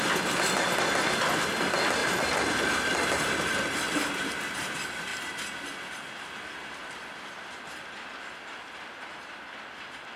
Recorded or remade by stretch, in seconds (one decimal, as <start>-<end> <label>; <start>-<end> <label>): 0.0-2.0 recorded; 2.0-2.6 remade; 2.6-10.2 recorded